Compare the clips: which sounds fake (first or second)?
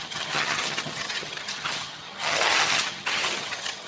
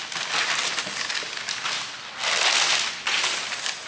first